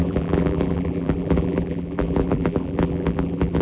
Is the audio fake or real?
fake